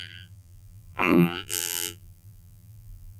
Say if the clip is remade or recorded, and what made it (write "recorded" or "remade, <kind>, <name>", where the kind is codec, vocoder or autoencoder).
remade, vocoder, BigVGAN v2